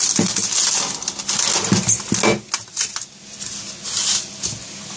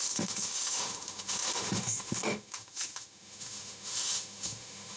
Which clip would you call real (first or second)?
first